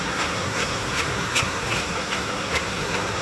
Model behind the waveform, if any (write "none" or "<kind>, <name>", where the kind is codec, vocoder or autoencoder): codec, SNAC